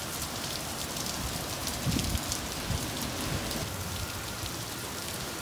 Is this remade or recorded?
remade